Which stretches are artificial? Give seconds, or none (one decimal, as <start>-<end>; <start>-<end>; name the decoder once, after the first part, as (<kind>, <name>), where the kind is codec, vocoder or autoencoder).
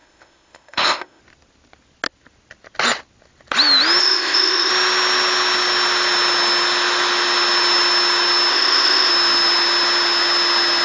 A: 0.0-1.2 (codec, ZipCodec); 4.0-4.7; 8.5-9.1